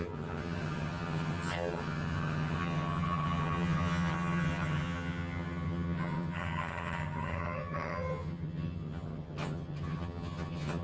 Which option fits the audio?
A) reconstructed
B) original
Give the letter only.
A